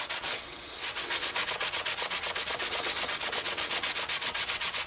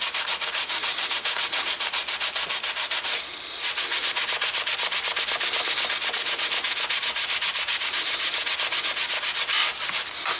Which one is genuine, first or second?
second